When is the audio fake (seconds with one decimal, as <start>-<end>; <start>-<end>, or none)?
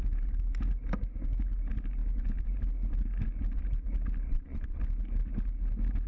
4.3-4.8